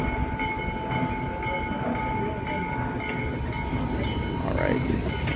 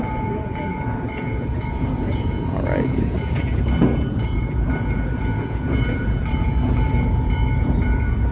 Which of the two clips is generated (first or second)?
second